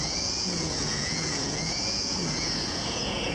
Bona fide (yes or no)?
no